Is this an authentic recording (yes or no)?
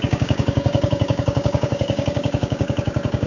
no